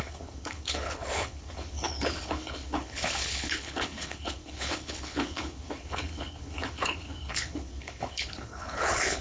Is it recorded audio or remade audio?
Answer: remade